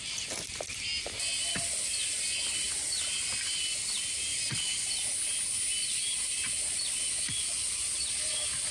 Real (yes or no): yes